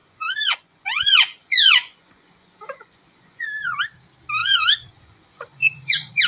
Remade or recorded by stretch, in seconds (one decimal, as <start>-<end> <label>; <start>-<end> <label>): 0.0-3.8 remade; 3.8-4.4 recorded; 4.4-6.3 remade